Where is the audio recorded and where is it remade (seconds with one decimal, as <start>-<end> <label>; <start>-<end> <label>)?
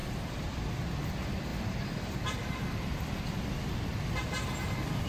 0.0-0.7 remade; 0.7-5.1 recorded